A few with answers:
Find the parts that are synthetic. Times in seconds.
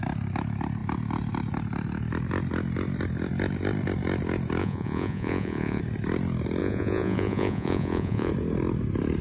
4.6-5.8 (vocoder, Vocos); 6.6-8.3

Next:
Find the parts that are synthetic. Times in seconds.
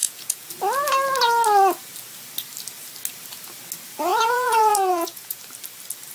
0.0-0.5 (vocoder, Vocos); 4.1-5.4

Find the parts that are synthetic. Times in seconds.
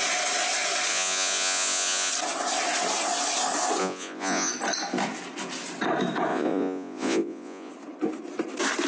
0.9-2.1 (vocoder, Vocos); 3.8-4.5; 6.3-7.7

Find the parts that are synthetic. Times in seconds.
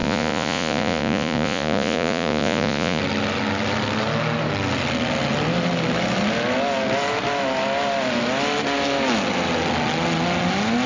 0.0-3.0 (vocoder, Vocos)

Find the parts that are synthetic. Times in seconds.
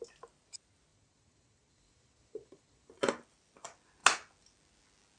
0.9-2.9 (vocoder, Vocos)